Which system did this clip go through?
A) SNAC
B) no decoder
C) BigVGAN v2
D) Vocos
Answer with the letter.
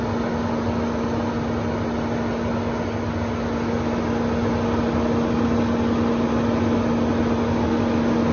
B